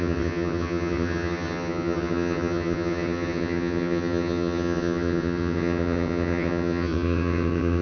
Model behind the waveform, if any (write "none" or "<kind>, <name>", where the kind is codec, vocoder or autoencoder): vocoder, HiFi-GAN